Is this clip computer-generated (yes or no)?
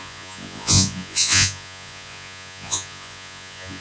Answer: yes